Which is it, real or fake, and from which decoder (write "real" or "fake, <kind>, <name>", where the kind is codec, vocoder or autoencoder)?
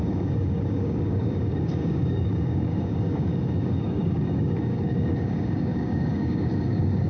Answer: fake, codec, DAC